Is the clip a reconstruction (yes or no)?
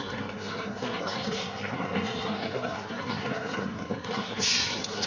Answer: yes